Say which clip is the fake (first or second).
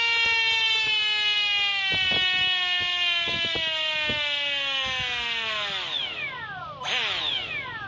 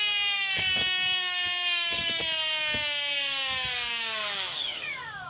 second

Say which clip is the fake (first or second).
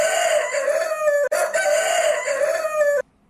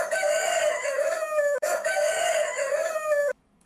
second